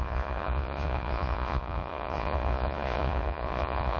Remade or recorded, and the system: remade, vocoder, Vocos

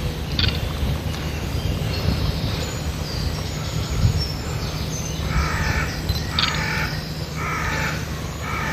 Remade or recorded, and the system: recorded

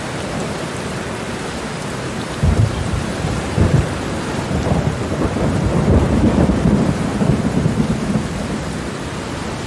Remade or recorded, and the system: remade, vocoder, BigVGAN v2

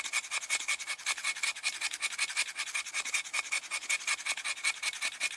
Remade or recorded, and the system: recorded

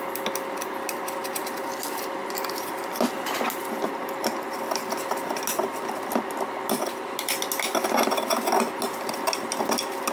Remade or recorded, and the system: recorded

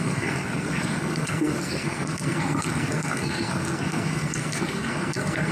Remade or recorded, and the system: remade, codec, SNAC